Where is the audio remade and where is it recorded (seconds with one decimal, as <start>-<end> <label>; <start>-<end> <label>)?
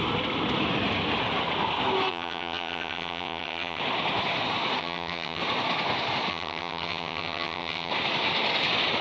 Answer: 0.0-2.1 recorded; 2.1-3.8 remade; 3.8-4.8 recorded; 4.8-5.4 remade; 5.4-6.3 recorded; 6.3-7.9 remade; 7.9-9.0 recorded